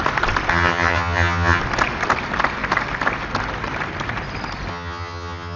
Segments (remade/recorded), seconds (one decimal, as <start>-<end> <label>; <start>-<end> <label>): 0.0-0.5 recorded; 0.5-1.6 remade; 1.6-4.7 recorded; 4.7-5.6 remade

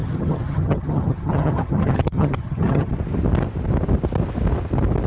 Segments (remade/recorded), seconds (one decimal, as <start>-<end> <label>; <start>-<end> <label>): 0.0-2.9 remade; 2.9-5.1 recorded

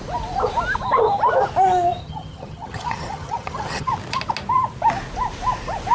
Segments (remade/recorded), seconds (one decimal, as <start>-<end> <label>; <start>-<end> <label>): 0.0-2.0 recorded; 2.0-3.9 remade; 3.9-5.9 recorded

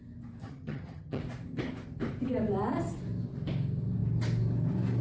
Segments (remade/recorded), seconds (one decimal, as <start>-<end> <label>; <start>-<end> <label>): 0.0-0.4 recorded; 0.4-1.2 remade; 1.2-5.0 recorded

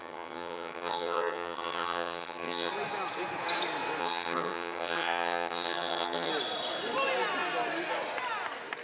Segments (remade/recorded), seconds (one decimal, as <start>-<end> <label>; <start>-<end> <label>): 0.0-2.7 remade; 2.7-4.0 recorded; 4.0-6.3 remade; 6.3-8.8 recorded

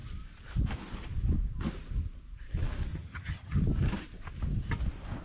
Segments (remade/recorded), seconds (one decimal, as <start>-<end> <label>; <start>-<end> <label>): 0.0-2.9 recorded; 2.9-3.6 remade; 3.6-5.2 recorded

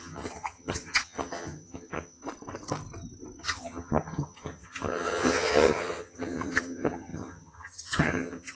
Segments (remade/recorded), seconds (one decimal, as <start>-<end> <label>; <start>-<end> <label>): 0.0-2.2 remade; 2.2-3.4 recorded; 3.4-8.5 remade